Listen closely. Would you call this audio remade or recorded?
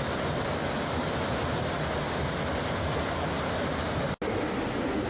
recorded